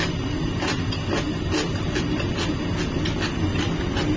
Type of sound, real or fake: real